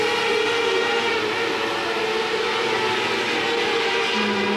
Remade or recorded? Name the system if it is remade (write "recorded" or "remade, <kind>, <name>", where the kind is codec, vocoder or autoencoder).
recorded